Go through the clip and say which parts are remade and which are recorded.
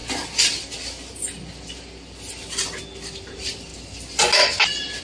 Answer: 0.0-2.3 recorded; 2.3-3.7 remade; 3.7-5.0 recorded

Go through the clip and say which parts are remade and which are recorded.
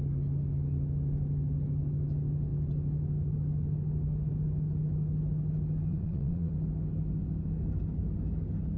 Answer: 0.0-5.9 recorded; 5.9-6.5 remade; 6.5-8.8 recorded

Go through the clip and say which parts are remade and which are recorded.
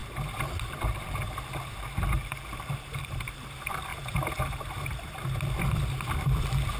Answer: 0.0-3.0 recorded; 3.0-3.9 remade; 3.9-4.6 recorded; 4.6-6.8 remade